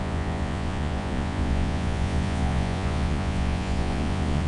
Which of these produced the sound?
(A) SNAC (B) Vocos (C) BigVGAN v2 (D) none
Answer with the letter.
B